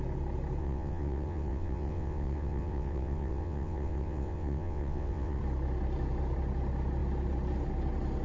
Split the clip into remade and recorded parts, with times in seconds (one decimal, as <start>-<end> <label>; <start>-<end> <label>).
0.0-0.6 recorded; 0.6-5.4 remade; 5.4-8.2 recorded